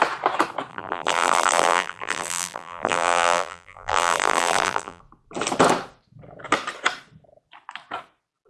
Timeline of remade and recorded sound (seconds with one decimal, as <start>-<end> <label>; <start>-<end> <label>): 0.0-0.7 recorded; 0.7-5.0 remade; 5.0-8.5 recorded